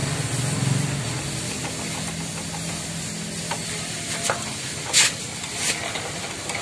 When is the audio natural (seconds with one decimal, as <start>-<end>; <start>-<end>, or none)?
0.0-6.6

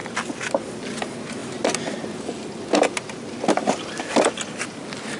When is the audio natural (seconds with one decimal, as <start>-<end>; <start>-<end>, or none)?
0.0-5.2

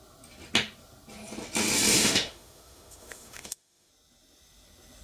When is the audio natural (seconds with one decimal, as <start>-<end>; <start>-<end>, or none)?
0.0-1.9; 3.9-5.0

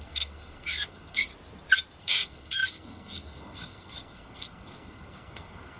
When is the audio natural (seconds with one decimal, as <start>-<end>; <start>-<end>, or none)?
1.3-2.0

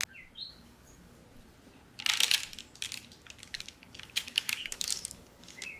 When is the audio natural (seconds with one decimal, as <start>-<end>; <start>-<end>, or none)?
0.0-0.5; 1.2-3.4

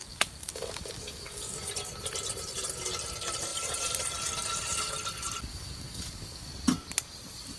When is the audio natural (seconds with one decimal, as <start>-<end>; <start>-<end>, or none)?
1.7-5.5; 6.5-7.6

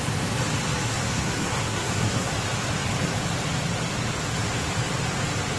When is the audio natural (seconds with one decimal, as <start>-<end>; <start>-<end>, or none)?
0.0-0.9; 2.3-5.6